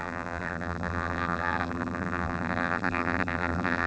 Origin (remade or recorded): remade